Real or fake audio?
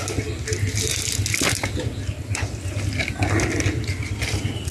real